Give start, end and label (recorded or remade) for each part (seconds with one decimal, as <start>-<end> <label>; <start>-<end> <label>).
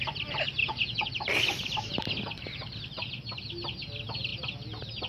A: 0.0-0.6 recorded; 0.6-1.1 remade; 1.1-5.1 recorded